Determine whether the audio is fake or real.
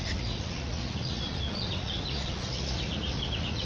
fake